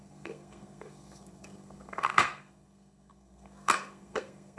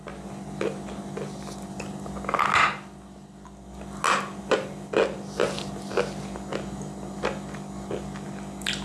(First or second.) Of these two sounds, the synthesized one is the first